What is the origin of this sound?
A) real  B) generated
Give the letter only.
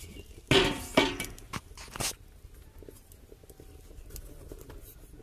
A